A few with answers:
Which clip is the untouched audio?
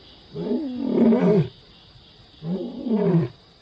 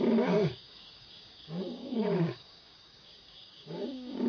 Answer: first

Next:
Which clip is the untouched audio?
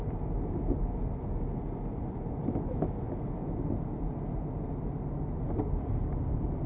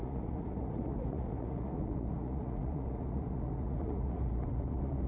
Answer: first